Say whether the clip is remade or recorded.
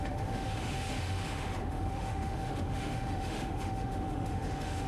remade